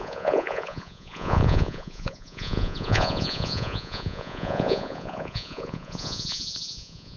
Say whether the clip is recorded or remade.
remade